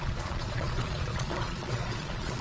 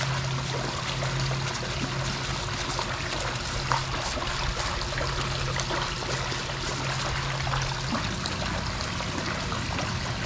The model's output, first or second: first